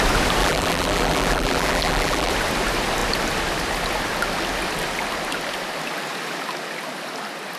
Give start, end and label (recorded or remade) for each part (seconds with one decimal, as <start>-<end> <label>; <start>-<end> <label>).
0.0-0.4 recorded; 0.4-2.3 remade; 2.3-7.6 recorded